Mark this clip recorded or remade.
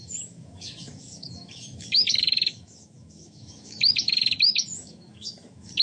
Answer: remade